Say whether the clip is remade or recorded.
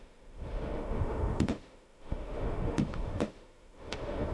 remade